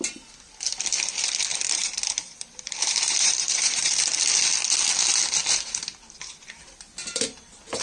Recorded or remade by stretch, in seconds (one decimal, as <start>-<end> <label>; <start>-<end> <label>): 0.0-1.5 recorded; 1.5-4.0 remade; 4.0-7.0 recorded; 7.0-7.8 remade